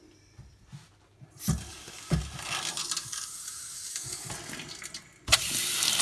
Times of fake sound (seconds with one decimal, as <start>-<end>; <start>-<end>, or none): 1.7-2.2; 3.0-4.3